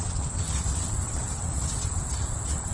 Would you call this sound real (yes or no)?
no